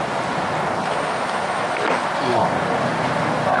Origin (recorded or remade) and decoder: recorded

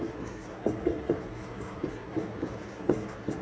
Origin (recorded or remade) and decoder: remade, codec, SNAC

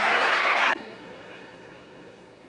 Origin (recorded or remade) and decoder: remade, codec, SNAC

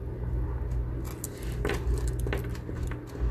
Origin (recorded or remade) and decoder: recorded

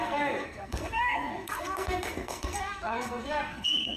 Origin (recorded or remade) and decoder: remade, codec, SNAC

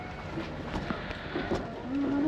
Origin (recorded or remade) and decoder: recorded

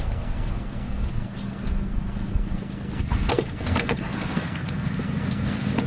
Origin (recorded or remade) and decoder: remade, codec, SNAC